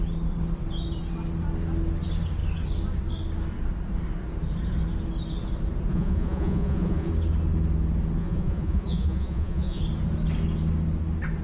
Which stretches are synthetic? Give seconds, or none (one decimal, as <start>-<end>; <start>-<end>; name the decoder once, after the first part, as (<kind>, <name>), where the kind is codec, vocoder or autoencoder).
5.9-7.1 (vocoder, Vocos); 8.2-9.8